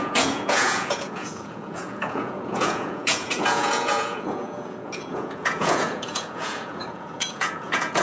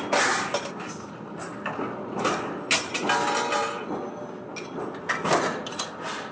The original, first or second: second